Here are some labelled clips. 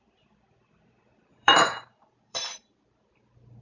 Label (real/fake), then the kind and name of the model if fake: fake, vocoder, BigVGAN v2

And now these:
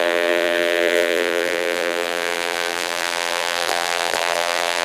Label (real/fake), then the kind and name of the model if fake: fake, vocoder, BigVGAN v2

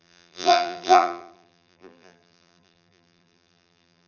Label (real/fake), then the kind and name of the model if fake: fake, vocoder, BigVGAN v2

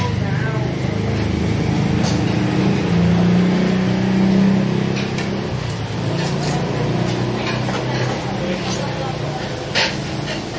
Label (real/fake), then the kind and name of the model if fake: real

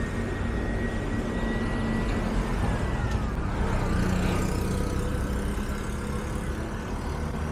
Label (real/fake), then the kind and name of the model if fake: real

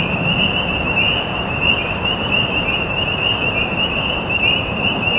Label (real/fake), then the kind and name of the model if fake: fake, vocoder, BigVGAN v2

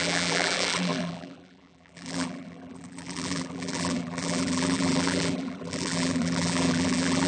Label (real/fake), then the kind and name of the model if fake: fake, vocoder, BigVGAN v2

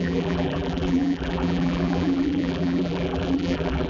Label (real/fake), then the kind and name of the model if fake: fake, vocoder, BigVGAN v2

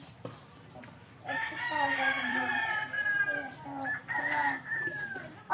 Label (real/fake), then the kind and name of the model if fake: fake, vocoder, BigVGAN v2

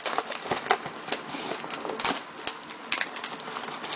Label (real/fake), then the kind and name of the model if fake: real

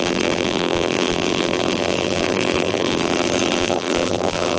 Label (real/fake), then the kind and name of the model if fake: fake, vocoder, BigVGAN v2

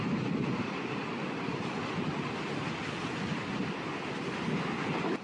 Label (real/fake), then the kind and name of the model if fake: fake, vocoder, BigVGAN v2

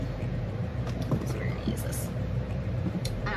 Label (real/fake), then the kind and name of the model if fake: fake, vocoder, BigVGAN v2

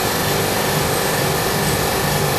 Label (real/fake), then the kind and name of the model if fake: fake, vocoder, BigVGAN v2